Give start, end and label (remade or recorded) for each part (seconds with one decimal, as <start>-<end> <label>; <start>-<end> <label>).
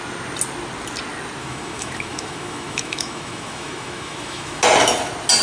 0.0-1.4 recorded; 1.4-4.6 remade; 4.6-5.4 recorded